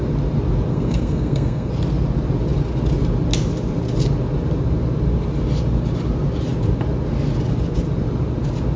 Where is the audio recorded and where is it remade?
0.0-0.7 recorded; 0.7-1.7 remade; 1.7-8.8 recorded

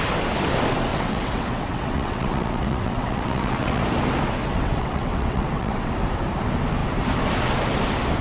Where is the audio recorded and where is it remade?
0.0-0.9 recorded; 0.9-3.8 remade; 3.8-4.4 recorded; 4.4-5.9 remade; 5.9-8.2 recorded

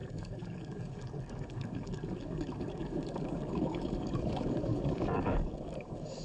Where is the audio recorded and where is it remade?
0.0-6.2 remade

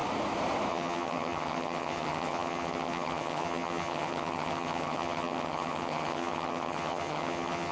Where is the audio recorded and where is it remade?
0.0-0.7 recorded; 0.7-7.7 remade

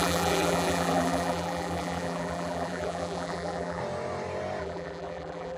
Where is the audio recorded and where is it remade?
0.0-3.8 remade; 3.8-4.6 recorded; 4.6-5.6 remade

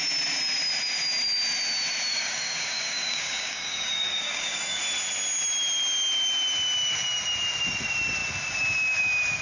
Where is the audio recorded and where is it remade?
0.0-2.1 recorded; 2.1-4.8 remade; 4.8-9.4 recorded

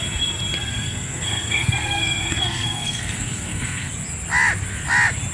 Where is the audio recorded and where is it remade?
0.0-0.7 recorded; 0.7-3.9 remade; 3.9-5.3 recorded